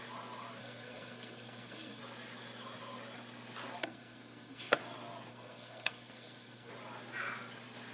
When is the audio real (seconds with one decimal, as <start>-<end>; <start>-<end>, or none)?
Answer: 0.0-0.6; 2.0-3.8; 4.8-5.3; 6.7-7.9